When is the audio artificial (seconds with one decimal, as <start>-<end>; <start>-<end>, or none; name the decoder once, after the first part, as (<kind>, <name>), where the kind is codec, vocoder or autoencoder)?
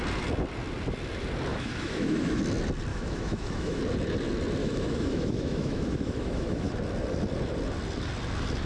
1.5-2.4 (autoencoder, DAC-VAE); 2.9-3.8; 4.6-6.7